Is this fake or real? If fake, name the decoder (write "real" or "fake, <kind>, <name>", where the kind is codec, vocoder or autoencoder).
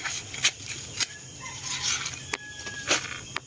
real